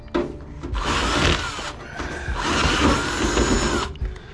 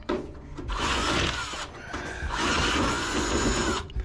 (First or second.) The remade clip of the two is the second